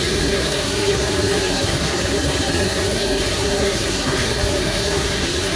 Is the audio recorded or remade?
remade